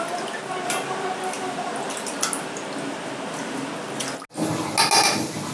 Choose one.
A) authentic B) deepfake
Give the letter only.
A